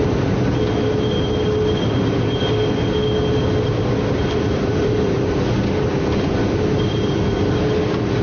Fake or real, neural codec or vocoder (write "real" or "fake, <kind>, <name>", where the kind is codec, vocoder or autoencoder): real